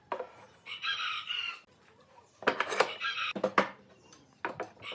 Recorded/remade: recorded